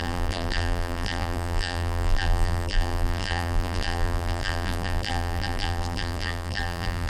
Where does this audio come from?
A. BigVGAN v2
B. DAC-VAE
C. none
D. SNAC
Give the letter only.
A